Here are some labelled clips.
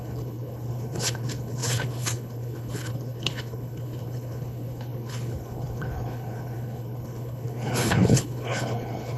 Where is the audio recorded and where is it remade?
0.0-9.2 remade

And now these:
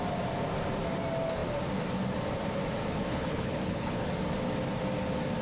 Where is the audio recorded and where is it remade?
0.0-3.1 recorded; 3.1-4.1 remade; 4.1-5.4 recorded